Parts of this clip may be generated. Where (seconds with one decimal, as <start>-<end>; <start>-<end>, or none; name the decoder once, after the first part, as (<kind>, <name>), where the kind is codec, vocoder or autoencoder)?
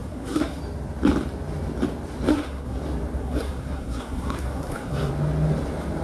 0.0-0.6 (codec, SNAC); 2.3-2.8; 3.2-5.1